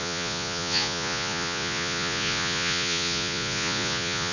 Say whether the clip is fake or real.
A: fake